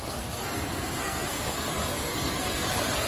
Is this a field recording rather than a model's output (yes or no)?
no